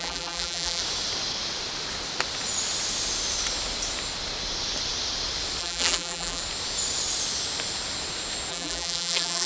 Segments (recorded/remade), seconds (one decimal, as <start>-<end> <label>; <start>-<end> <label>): 0.0-0.8 remade; 0.8-5.6 recorded; 5.6-6.4 remade; 6.4-8.5 recorded; 8.5-9.5 remade